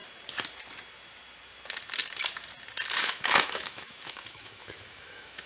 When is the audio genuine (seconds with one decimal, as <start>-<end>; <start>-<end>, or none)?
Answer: 0.0-3.0